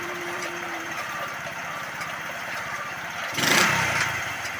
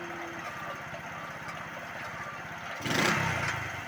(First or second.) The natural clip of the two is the second